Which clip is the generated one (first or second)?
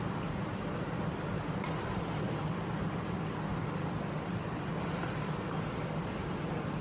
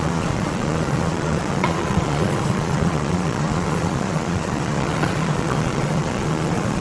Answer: second